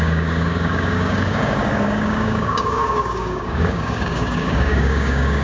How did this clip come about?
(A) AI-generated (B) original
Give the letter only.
A